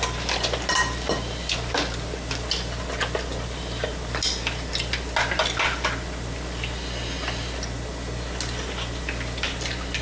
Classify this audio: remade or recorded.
recorded